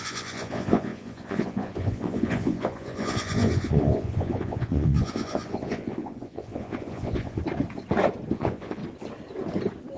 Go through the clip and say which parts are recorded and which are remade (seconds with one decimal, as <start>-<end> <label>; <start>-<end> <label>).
0.0-7.4 remade; 7.4-8.3 recorded; 8.3-8.8 remade; 8.8-10.0 recorded